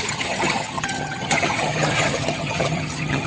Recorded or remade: remade